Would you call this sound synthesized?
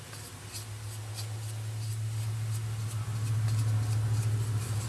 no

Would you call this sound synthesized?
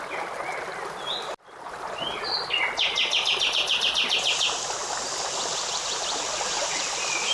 no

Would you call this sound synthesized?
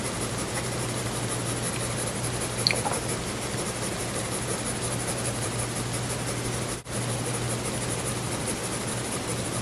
no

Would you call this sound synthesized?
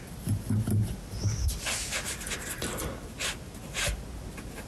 no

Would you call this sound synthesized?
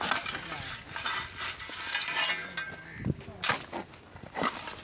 no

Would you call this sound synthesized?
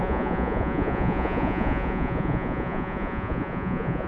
yes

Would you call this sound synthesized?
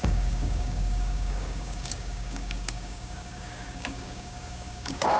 yes